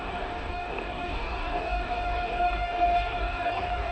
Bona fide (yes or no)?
no